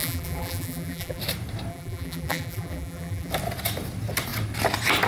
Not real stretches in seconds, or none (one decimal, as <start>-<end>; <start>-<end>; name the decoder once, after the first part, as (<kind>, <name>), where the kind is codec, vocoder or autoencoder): 0.0-1.2 (vocoder, BigVGAN v2); 1.7-3.3